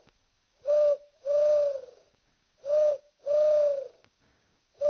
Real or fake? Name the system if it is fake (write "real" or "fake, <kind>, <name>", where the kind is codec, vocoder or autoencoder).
fake, codec, DAC